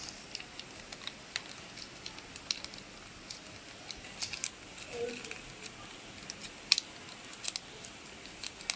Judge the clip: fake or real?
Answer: real